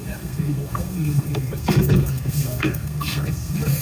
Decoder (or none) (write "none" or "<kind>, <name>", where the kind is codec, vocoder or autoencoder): codec, SNAC